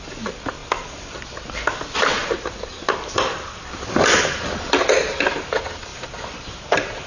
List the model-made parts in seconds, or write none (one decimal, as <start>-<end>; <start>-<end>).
2.2-5.2; 5.9-6.4